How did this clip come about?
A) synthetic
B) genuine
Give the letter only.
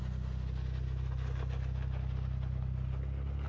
B